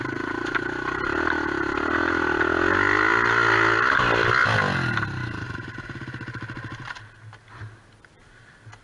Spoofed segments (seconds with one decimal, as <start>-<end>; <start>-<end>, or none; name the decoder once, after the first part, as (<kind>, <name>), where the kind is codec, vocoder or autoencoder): none